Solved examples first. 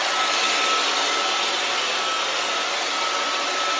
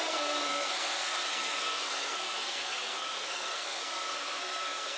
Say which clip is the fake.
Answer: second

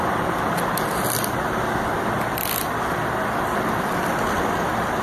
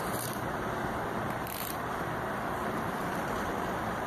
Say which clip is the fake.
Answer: second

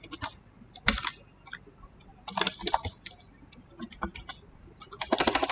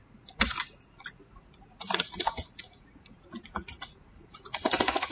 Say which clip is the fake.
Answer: second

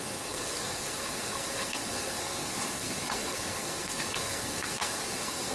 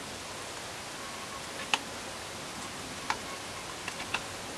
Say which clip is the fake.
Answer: first